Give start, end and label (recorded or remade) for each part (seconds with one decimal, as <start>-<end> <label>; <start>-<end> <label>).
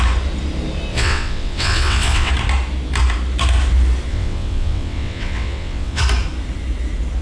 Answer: 0.0-0.9 recorded; 0.9-2.3 remade; 2.3-4.1 recorded; 4.1-6.0 remade; 6.0-7.2 recorded